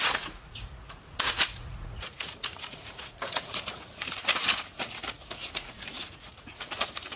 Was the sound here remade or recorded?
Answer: remade